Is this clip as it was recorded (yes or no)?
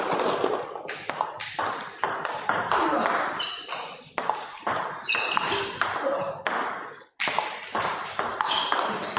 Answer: yes